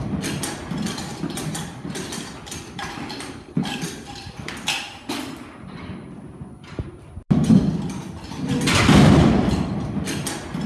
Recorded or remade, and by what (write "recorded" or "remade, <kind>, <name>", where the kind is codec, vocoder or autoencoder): recorded